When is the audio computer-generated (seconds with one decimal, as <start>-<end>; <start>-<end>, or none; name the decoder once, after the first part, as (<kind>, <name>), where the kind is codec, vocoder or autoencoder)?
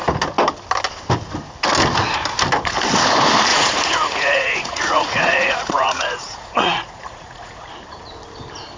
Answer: 3.5-7.7 (vocoder, Vocos)